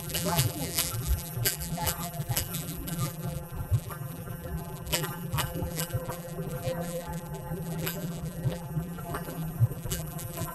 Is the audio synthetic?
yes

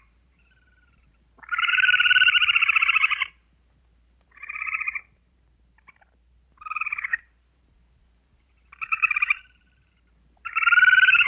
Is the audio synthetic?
yes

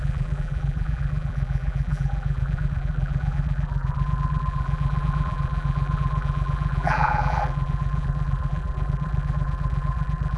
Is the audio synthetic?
yes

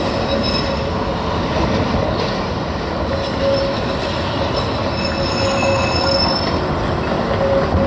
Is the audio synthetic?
no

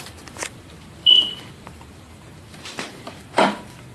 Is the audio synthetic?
yes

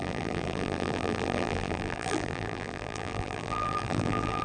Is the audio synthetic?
yes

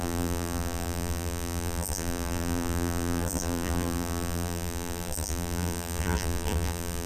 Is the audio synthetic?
yes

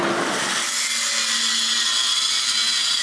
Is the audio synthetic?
no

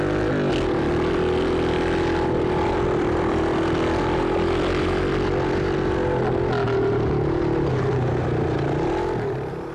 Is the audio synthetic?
no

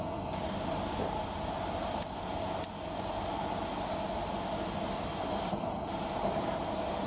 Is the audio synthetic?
no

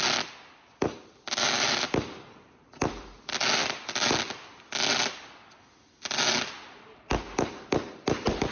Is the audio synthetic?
no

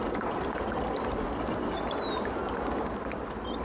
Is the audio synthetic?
no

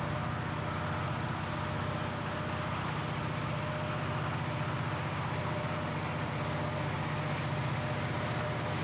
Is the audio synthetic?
no